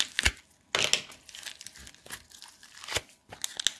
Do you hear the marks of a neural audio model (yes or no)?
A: no